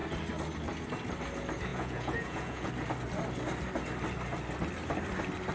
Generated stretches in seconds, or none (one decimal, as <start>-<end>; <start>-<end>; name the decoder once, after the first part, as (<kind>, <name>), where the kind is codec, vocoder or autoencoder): 1.7-2.7 (vocoder, Vocos)